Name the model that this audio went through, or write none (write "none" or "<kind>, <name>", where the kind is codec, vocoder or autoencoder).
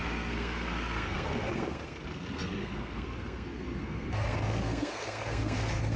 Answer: codec, SNAC